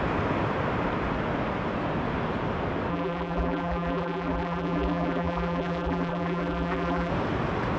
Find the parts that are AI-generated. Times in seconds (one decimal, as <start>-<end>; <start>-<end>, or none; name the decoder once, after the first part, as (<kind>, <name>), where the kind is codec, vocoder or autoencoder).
2.9-7.1 (vocoder, BigVGAN v2)